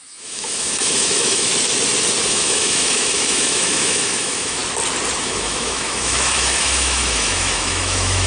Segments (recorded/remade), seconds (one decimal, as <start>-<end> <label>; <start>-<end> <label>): 0.0-1.5 remade; 1.5-2.2 recorded; 2.2-4.6 remade; 4.6-5.2 recorded; 5.2-8.3 remade